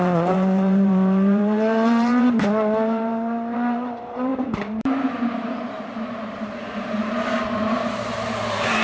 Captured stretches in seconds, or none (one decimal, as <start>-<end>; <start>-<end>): none